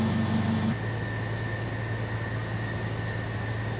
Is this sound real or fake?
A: real